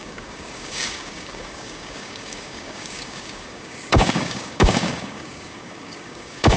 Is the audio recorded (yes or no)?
no